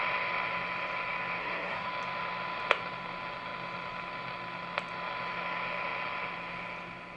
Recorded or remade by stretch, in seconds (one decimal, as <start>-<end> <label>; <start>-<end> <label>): 0.0-1.4 recorded; 1.4-1.9 remade; 1.9-7.2 recorded